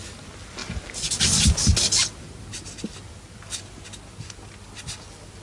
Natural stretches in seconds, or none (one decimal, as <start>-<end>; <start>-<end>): 0.0-5.4